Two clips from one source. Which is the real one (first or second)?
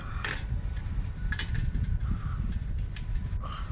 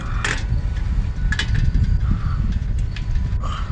second